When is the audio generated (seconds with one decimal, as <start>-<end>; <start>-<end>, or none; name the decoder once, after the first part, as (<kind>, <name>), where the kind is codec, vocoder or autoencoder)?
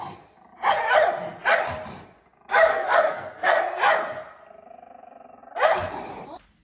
2.7-3.6 (codec, SNAC)